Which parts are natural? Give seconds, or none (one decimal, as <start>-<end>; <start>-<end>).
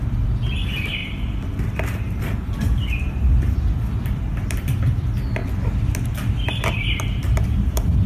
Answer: 1.0-3.1; 5.4-6.3